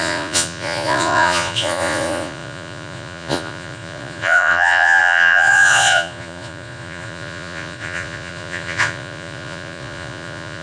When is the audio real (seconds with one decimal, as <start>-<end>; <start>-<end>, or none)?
none